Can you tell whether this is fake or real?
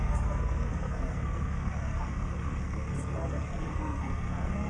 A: fake